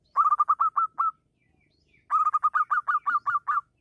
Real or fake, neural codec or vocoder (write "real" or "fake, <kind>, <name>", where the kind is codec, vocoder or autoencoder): real